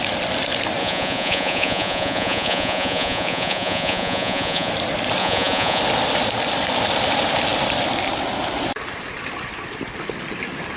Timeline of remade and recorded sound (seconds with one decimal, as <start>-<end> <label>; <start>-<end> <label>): 0.0-0.8 recorded; 0.8-4.7 remade; 4.7-5.2 recorded; 5.2-5.8 remade; 5.8-10.8 recorded